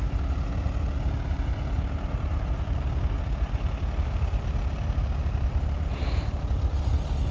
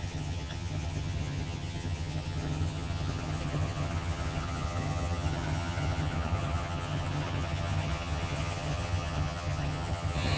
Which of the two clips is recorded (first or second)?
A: first